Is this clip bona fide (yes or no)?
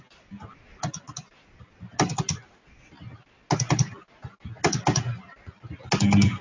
yes